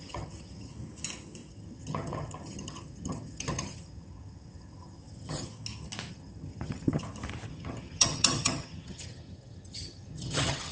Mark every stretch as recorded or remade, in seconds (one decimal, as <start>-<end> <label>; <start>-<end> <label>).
0.0-0.7 remade; 0.7-1.5 recorded; 1.5-5.5 remade; 5.5-6.1 recorded; 6.1-7.0 remade; 7.0-7.5 recorded; 7.5-10.7 remade